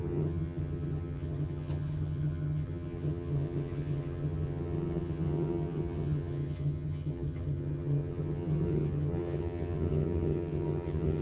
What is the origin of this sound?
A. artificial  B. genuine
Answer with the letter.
A